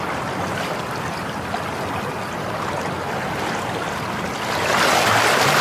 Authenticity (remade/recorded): recorded